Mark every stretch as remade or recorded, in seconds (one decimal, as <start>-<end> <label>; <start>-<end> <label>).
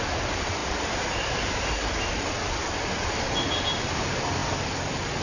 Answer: 0.0-5.2 recorded